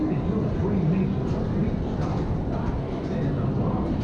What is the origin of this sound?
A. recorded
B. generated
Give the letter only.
A